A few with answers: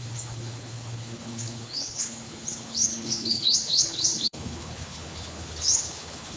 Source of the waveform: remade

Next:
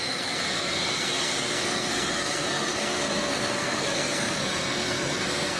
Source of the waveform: remade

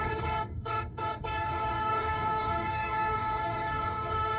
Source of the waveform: remade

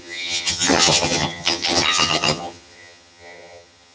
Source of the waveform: remade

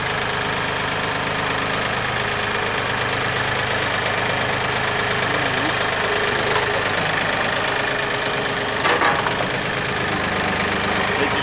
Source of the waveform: recorded